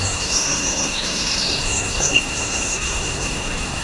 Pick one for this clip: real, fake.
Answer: fake